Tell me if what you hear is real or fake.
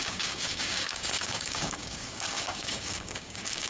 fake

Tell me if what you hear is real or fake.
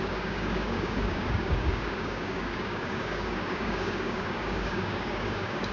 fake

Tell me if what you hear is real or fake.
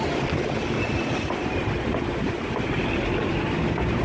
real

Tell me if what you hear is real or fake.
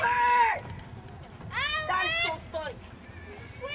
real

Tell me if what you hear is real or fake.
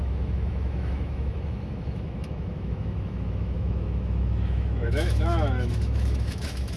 fake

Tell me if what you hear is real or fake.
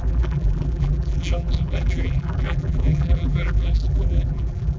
fake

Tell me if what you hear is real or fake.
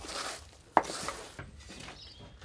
real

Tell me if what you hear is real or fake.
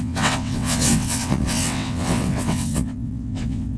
fake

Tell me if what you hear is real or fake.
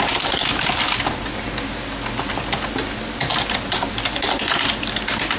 real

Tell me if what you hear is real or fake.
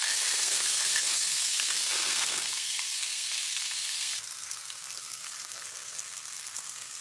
fake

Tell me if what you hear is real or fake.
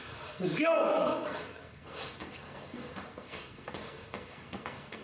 fake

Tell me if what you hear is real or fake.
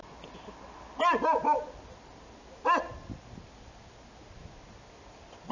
real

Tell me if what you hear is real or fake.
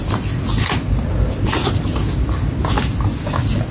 real